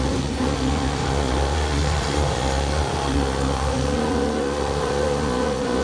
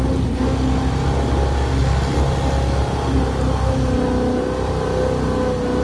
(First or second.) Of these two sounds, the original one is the second